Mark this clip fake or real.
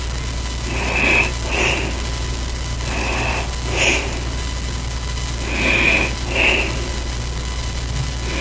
real